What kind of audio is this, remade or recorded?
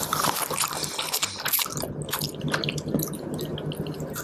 recorded